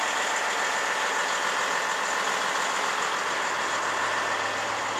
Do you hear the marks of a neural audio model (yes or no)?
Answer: no